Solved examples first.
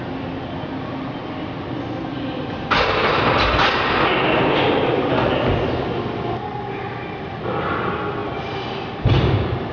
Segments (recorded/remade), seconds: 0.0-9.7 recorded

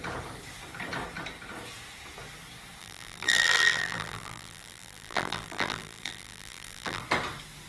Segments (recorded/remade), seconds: 0.0-2.8 recorded; 2.8-7.0 remade; 7.0-7.7 recorded

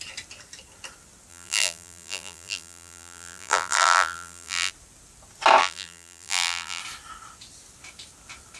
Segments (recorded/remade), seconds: 0.0-1.3 recorded; 1.3-4.7 remade; 4.7-5.6 recorded; 5.6-6.8 remade; 6.8-8.6 recorded